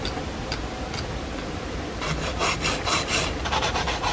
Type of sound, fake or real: real